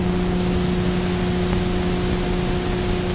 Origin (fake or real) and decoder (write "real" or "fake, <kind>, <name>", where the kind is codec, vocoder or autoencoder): real